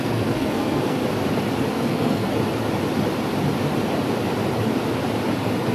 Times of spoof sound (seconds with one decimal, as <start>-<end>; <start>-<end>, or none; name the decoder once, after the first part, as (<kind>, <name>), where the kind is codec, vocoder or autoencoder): 0.0-1.0 (codec, SNAC); 1.7-2.3